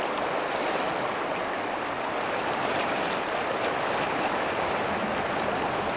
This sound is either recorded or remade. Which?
recorded